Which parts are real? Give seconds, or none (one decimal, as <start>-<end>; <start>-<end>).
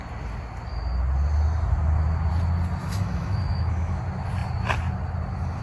0.0-2.8; 4.0-5.6